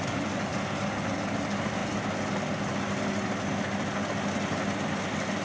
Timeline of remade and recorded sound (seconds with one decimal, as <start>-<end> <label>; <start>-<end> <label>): 0.0-5.4 recorded